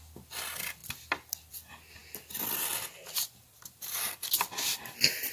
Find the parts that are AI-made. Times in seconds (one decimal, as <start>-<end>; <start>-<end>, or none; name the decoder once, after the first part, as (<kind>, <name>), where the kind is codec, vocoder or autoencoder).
none

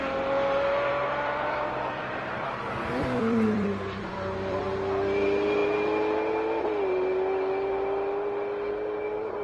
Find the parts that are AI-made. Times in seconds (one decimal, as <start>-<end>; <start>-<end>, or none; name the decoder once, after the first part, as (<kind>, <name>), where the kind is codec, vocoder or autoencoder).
0.9-4.6 (vocoder, BigVGAN v2)

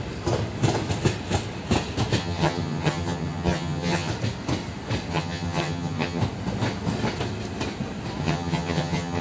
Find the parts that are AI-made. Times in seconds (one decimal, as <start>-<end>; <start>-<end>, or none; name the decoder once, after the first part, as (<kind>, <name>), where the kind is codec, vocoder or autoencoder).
2.2-4.1 (vocoder, HiFi-GAN); 5.1-6.2; 8.2-9.2

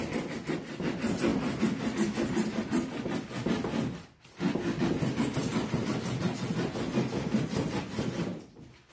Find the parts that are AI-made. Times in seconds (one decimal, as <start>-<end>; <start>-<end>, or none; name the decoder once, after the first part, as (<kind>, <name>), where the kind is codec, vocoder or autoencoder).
5.4-5.9 (vocoder, BigVGAN v2); 8.3-8.9

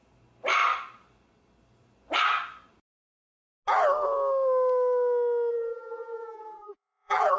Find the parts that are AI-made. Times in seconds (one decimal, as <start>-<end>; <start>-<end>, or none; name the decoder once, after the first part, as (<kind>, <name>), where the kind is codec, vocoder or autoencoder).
5.5-7.4 (vocoder, BigVGAN v2)

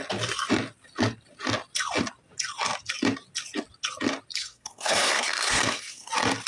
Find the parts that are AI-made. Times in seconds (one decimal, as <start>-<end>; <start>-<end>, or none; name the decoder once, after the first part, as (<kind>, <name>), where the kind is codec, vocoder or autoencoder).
4.4-6.1 (codec, SNAC)